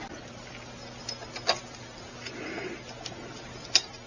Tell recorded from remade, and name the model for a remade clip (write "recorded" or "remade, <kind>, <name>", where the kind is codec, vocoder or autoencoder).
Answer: recorded